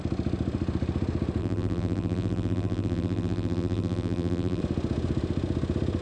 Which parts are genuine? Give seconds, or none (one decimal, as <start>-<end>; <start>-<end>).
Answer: 0.0-1.4; 4.6-6.0